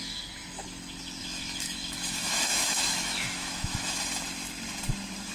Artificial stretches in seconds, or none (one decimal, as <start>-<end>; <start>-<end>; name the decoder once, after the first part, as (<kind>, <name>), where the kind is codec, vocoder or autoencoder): 1.2-4.0 (autoencoder, DAC-VAE)